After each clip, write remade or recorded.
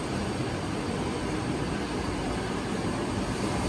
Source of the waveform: recorded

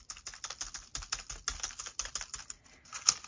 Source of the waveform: recorded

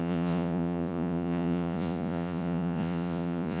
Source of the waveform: remade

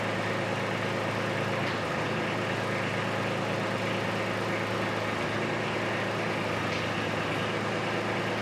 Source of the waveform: recorded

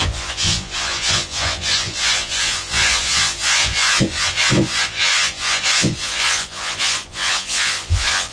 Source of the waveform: remade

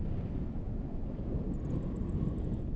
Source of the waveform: recorded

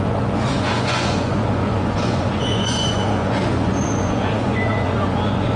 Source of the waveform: remade